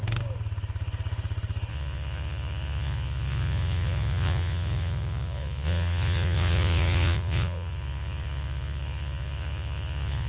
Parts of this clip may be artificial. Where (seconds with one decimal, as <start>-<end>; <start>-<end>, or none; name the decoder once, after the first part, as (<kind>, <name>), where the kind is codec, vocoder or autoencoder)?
1.7-10.3 (vocoder, Vocos)